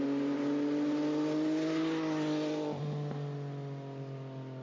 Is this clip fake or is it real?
real